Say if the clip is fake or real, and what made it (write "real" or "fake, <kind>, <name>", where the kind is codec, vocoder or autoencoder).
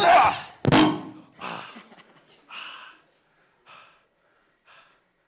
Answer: real